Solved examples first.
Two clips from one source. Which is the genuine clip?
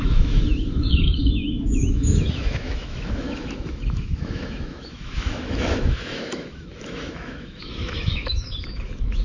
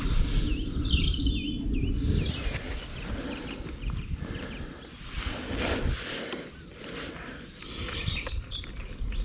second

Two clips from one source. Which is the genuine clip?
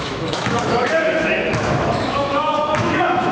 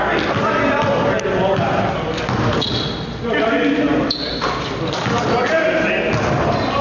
second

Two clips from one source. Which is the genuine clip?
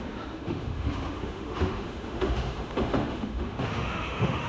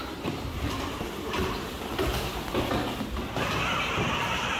second